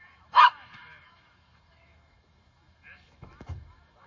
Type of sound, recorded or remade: remade